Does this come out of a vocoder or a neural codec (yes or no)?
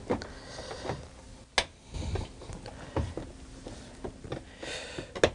no